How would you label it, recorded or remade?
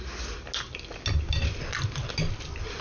recorded